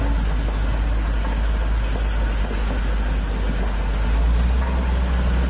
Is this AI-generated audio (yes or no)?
no